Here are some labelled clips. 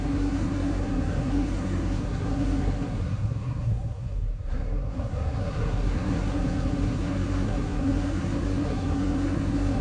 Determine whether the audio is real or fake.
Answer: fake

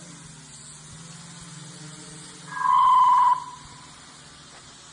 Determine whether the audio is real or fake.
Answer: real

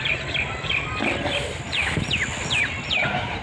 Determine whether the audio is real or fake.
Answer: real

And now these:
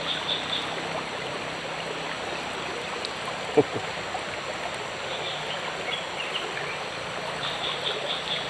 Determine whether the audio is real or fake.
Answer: real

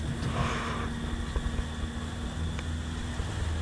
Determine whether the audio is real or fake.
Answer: real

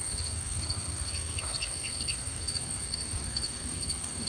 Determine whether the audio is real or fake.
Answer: fake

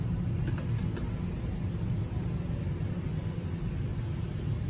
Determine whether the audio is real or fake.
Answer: real